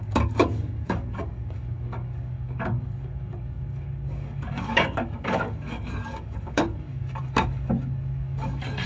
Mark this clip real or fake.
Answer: fake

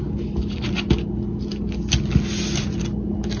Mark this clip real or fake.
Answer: real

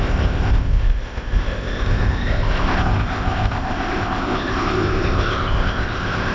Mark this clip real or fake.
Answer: fake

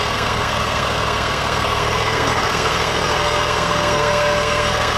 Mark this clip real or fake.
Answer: fake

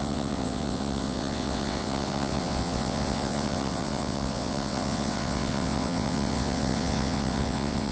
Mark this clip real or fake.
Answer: fake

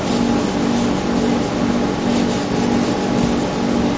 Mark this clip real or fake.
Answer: real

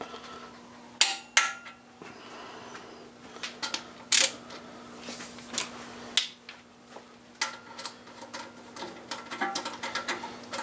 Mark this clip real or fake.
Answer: real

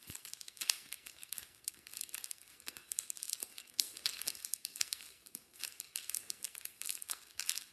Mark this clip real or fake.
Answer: fake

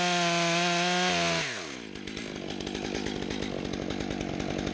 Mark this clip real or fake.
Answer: real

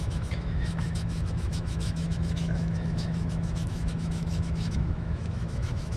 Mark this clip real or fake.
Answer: fake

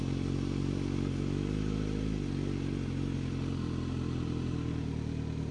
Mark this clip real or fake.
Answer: real